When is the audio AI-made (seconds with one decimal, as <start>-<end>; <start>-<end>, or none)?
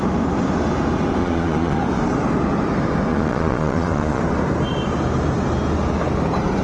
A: 1.2-1.8; 3.1-4.2